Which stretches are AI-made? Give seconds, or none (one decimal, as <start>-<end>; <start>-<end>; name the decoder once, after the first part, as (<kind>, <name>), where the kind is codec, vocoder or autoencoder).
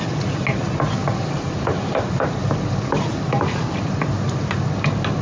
1.0-4.1 (vocoder, BigVGAN v2)